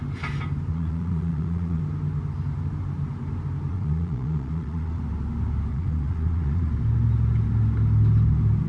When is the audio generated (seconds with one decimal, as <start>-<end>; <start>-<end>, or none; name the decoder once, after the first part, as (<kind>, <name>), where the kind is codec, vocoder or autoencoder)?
0.7-1.8 (vocoder, Vocos); 3.7-5.0; 5.7-6.7